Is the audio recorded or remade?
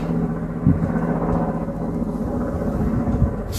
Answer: recorded